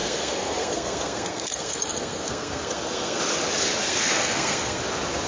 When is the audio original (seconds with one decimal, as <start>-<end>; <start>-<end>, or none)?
3.2-3.8; 4.8-5.3